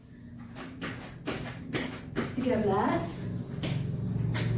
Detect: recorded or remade recorded